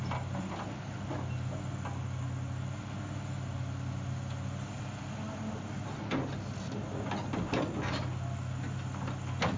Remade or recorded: recorded